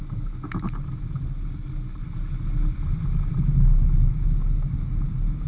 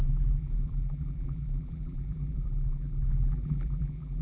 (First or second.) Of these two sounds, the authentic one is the first